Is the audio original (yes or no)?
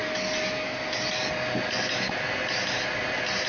yes